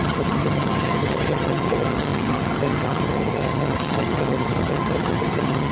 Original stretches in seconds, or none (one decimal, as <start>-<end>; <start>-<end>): none

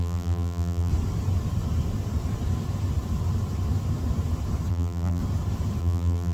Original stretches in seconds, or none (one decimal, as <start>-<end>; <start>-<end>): 0.9-4.7; 5.2-5.8

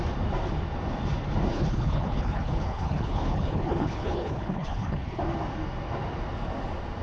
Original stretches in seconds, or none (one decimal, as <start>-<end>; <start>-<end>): 0.0-1.5; 5.2-7.0

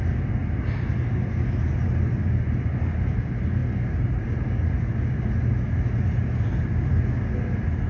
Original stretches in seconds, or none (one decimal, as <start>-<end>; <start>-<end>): 0.0-7.9

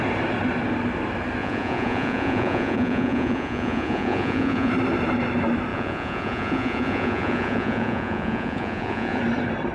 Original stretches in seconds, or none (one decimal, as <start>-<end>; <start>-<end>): 0.0-1.4; 4.7-5.7; 9.2-9.7

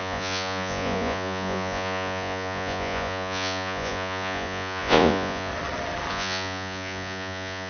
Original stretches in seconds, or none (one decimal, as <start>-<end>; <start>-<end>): 5.5-6.1